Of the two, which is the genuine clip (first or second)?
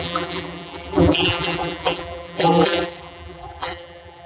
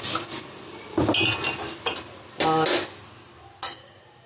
second